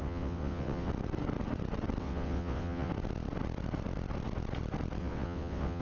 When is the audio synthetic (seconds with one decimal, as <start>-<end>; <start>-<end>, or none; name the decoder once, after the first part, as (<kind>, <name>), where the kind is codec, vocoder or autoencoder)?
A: 0.0-0.9 (vocoder, WaveNeXt); 2.0-2.9; 5.0-5.8